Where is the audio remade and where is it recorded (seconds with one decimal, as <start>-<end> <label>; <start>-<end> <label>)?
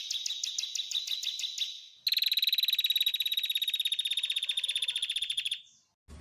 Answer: 0.0-3.1 recorded; 3.1-5.6 remade; 5.6-6.2 recorded